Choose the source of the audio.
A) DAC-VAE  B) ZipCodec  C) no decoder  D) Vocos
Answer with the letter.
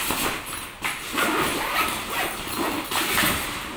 C